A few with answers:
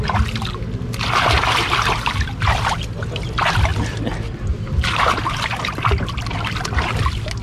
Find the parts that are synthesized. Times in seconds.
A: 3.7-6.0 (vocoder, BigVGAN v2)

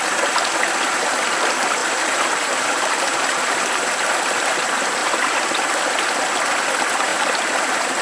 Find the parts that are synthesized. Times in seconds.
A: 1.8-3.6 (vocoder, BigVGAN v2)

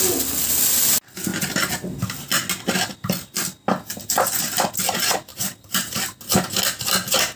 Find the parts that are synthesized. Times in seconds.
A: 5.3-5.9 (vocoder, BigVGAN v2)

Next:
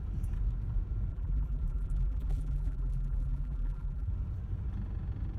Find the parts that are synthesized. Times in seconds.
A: 1.1-4.1 (vocoder, BigVGAN v2)

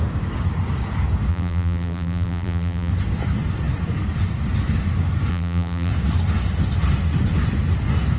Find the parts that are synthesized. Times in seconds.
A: 1.3-2.9 (vocoder, BigVGAN v2); 5.3-5.9